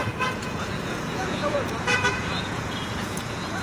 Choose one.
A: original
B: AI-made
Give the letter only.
B